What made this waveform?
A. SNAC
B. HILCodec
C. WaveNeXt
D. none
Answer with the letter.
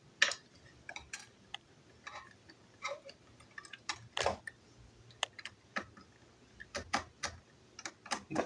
D